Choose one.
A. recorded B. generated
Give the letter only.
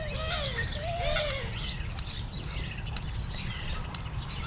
A